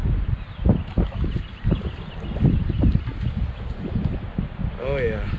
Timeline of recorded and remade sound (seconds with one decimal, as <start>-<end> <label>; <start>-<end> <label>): 0.0-5.4 recorded